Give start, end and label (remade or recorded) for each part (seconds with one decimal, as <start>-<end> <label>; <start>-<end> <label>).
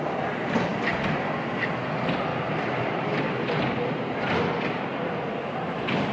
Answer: 0.0-0.7 recorded; 0.7-1.3 remade; 1.3-2.3 recorded; 2.3-3.1 remade; 3.1-4.9 recorded; 4.9-6.1 remade